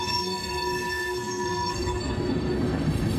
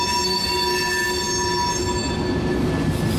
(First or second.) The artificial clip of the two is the first